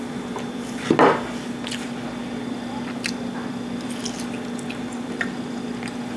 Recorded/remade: recorded